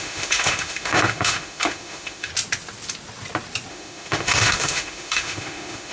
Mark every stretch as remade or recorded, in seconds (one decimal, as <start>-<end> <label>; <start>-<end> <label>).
0.0-2.3 remade; 2.3-3.7 recorded; 3.7-5.9 remade